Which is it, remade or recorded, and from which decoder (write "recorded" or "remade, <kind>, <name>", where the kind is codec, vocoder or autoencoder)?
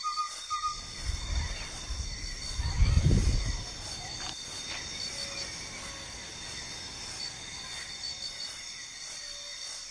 recorded